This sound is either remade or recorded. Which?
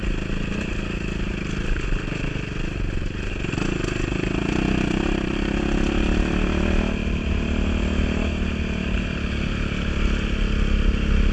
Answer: recorded